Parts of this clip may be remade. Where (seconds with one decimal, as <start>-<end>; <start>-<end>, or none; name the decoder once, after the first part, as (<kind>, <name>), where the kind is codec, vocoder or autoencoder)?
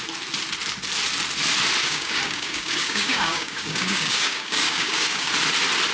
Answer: 1.8-5.3 (codec, DAC)